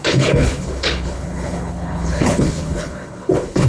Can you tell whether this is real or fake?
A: fake